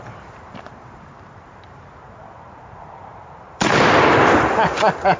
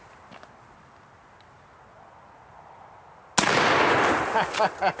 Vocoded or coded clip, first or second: first